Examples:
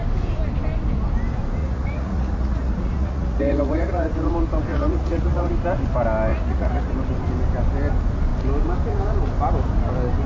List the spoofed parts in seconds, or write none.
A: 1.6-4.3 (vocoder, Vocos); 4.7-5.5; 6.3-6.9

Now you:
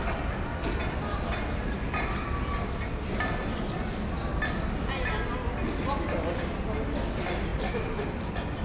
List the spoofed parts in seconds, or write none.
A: none